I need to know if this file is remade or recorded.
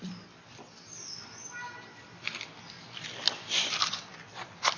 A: remade